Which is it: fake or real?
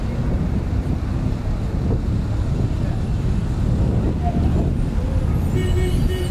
real